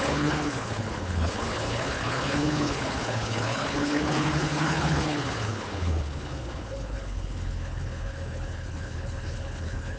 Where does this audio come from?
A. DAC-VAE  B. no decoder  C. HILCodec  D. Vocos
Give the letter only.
C